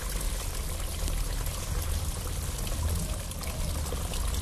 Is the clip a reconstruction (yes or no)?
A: no